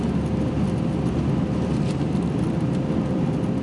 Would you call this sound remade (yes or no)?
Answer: no